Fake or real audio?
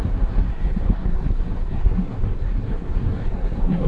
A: fake